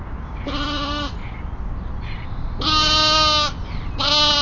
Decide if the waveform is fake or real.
real